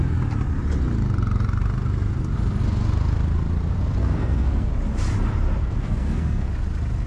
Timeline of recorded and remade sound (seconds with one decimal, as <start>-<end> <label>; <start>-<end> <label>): 0.0-4.0 recorded; 4.0-4.7 remade; 4.7-5.6 recorded; 5.6-6.5 remade; 6.5-7.1 recorded